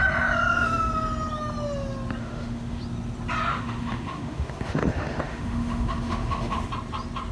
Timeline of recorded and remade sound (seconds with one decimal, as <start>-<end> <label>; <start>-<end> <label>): 0.0-2.2 recorded; 2.2-2.8 remade; 2.8-3.5 recorded; 3.5-6.7 remade; 6.7-7.3 recorded